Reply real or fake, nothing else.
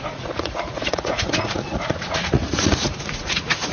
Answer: fake